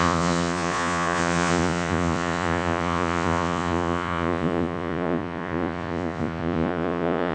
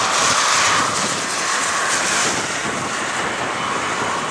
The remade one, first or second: first